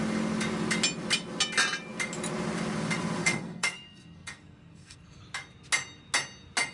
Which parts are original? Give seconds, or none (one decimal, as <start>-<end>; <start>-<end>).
0.0-3.2; 5.2-6.7